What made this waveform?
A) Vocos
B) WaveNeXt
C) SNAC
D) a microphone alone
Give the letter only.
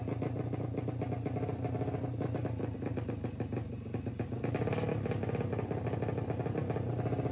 D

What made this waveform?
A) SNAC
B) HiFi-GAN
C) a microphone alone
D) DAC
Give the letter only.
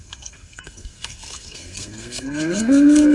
A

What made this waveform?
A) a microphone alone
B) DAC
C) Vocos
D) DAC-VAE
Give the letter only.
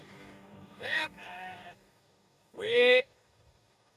B